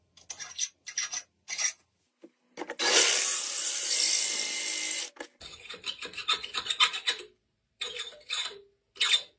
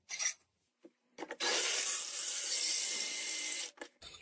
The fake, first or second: second